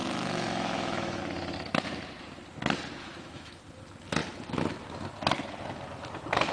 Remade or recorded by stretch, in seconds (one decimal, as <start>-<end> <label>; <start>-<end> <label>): 0.0-1.2 remade; 1.2-3.0 recorded; 3.0-3.6 remade; 3.6-6.5 recorded